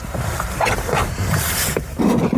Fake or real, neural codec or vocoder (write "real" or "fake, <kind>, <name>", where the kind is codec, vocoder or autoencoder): fake, vocoder, BigVGAN v2